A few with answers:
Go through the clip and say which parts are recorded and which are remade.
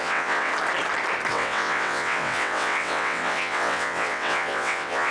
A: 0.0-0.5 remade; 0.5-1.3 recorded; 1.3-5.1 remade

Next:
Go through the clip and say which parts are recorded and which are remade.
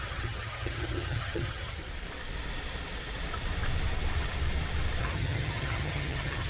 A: 0.0-1.8 remade; 1.8-5.0 recorded; 5.0-6.5 remade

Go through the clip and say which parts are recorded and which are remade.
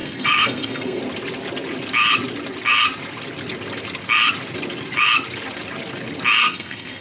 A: 0.0-1.0 remade; 1.0-6.4 recorded; 6.4-7.0 remade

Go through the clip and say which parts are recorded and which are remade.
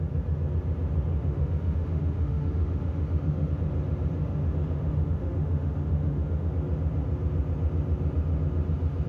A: 0.0-1.1 recorded; 1.1-3.5 remade; 3.5-4.2 recorded; 4.2-6.5 remade; 6.5-9.1 recorded